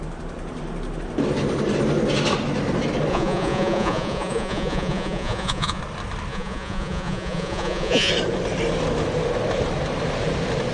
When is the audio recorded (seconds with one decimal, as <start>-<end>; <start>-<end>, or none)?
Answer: 0.0-3.1; 5.8-6.3; 8.1-10.7

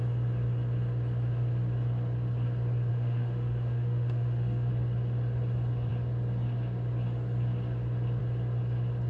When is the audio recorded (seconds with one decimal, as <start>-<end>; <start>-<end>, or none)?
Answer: 0.0-2.9; 4.7-9.1

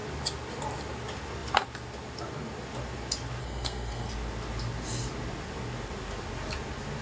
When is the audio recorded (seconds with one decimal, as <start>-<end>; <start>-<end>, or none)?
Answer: 0.0-3.4; 4.1-7.0